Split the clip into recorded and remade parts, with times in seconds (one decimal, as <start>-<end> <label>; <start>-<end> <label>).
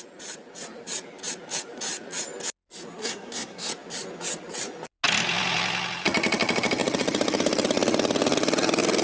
0.0-3.0 recorded; 3.0-3.7 remade; 3.7-9.0 recorded